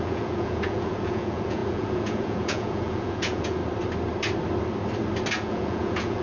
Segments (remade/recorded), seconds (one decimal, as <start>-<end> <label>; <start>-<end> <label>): 0.0-3.6 remade; 3.6-5.3 recorded; 5.3-6.2 remade